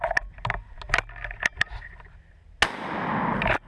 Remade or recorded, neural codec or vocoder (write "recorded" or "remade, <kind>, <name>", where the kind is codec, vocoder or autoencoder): recorded